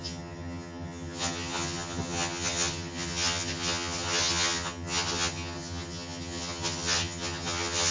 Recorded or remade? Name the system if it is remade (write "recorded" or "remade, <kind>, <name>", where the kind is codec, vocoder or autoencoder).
remade, vocoder, HiFi-GAN